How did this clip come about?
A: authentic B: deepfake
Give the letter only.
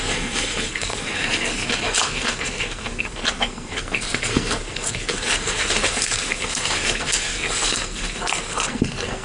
B